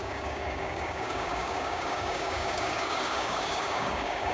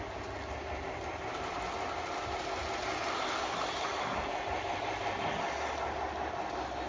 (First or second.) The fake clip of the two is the first